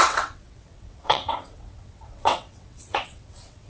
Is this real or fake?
fake